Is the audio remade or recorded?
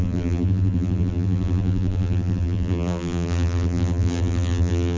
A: remade